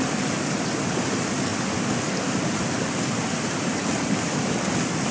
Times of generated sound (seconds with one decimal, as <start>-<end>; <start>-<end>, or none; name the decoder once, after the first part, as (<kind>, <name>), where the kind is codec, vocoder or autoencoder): none